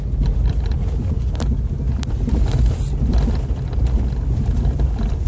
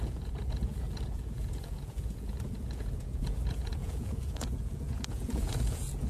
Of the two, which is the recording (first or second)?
first